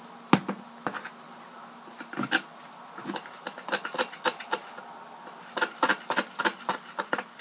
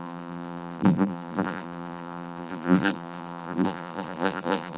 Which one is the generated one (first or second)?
second